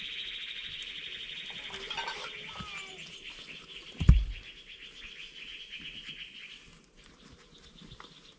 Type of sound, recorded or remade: recorded